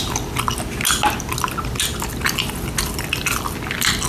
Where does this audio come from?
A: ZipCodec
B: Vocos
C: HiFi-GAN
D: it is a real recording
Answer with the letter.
D